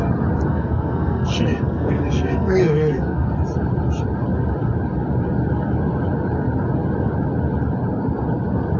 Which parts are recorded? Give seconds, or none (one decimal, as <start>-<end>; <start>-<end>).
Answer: 0.0-0.5; 3.3-8.8